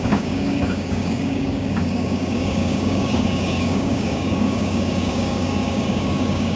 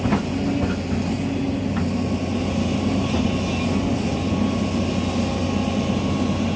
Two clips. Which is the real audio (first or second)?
second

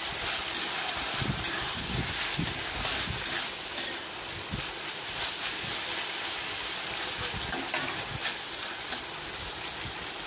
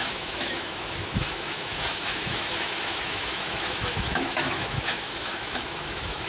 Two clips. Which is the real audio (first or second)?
first